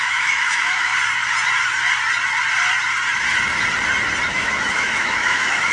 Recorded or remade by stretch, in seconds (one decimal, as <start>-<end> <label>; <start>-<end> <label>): 0.0-0.9 remade; 0.9-4.3 recorded; 4.3-5.7 remade